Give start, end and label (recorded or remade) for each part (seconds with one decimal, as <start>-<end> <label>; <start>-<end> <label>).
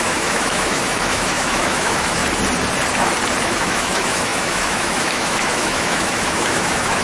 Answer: 0.0-2.2 remade; 2.2-3.4 recorded; 3.4-7.0 remade